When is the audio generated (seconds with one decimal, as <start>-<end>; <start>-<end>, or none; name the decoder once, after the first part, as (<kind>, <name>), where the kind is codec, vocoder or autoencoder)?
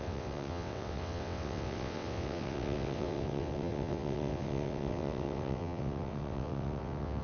0.0-7.2 (vocoder, WaveNeXt)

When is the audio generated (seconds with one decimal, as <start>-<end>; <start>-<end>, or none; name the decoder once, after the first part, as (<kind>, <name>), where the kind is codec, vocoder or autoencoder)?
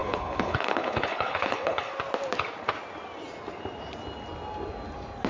0.0-1.9 (codec, HILCodec)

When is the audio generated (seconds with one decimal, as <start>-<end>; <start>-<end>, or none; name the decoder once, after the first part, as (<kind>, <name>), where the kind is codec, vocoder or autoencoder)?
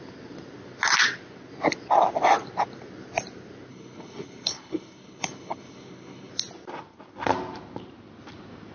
3.7-6.3 (codec, HILCodec)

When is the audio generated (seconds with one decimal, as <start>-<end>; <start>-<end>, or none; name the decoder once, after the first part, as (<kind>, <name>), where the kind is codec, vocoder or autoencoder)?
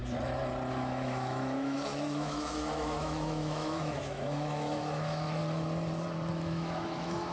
0.7-5.4 (autoencoder, DAC-VAE); 6.3-7.3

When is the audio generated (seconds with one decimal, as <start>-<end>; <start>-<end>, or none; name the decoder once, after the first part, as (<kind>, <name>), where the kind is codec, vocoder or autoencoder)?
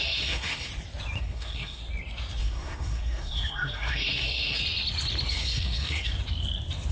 0.0-0.7 (codec, SNAC); 1.2-1.8; 2.4-4.6; 5.3-6.1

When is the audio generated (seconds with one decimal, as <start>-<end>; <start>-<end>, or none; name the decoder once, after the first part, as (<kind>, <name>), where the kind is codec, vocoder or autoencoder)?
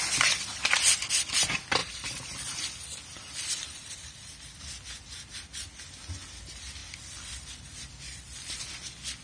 1.8-4.6 (vocoder, BigVGAN v2); 6.8-8.6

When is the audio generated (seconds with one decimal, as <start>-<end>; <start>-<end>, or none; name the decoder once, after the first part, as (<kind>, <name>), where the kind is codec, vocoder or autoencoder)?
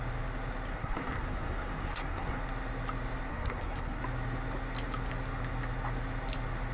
0.7-2.4 (codec, SNAC); 3.3-4.0